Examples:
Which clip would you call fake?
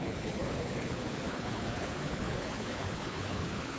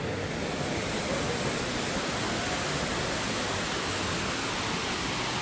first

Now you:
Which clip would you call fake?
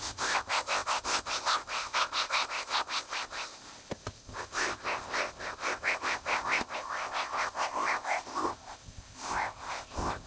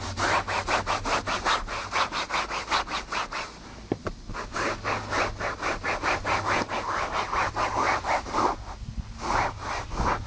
first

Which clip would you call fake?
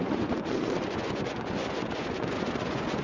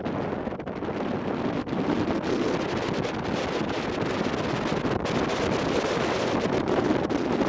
first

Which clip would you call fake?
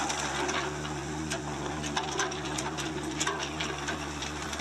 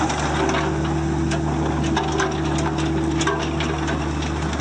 first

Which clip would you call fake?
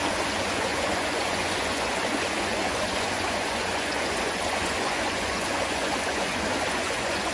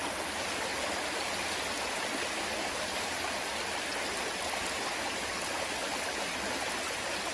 first